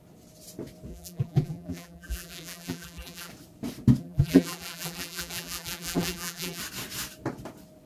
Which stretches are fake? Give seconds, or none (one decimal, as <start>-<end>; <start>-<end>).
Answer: 0.9-3.3; 4.0-6.6